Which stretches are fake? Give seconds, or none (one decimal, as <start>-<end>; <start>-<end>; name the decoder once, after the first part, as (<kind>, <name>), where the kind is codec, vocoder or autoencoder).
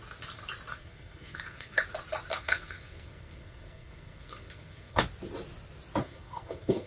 0.7-1.8 (codec, SNAC); 2.3-5.0; 6.0-6.9